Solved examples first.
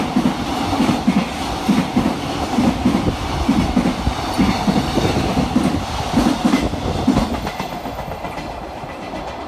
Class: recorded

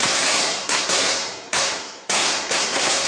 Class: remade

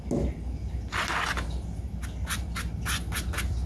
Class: recorded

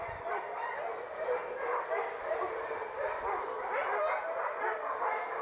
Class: recorded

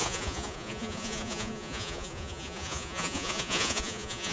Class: remade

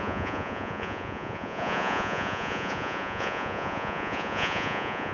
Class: remade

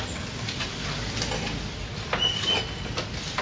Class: recorded